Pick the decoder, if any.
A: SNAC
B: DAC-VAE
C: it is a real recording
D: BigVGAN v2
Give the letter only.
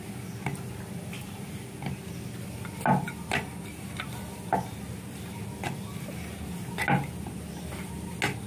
C